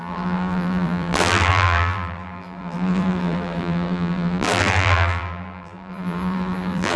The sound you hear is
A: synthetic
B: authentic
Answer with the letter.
A